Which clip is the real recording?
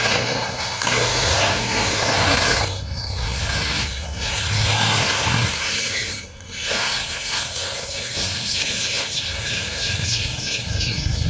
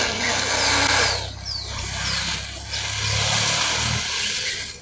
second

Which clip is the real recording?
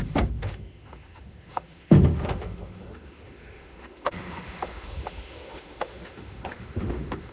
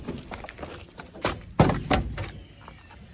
second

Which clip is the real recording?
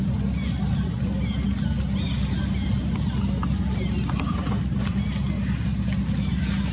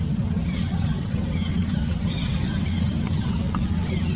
first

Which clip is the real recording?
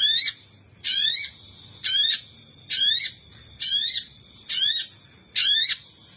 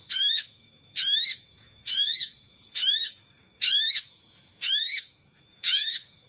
first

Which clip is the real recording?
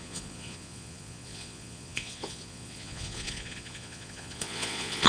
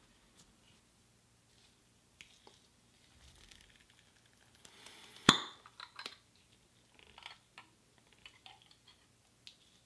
second